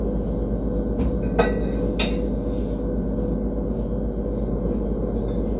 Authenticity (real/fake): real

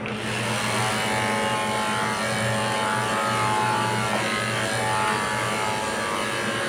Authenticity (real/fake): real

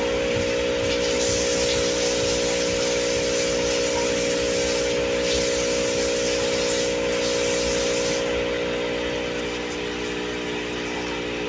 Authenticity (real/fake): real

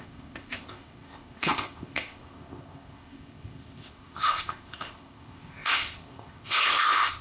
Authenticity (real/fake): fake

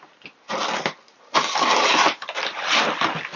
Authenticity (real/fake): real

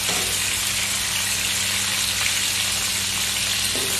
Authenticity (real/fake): real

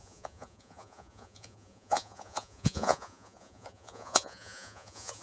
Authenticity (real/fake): fake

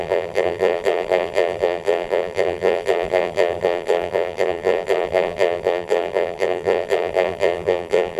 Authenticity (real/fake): fake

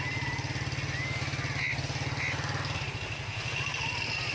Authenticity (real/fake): real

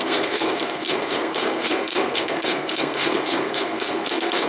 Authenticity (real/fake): fake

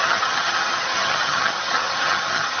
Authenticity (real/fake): fake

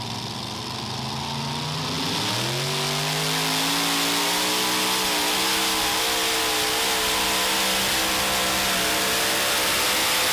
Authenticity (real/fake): real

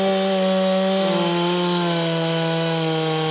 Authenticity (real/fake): real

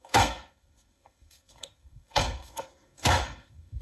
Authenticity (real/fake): fake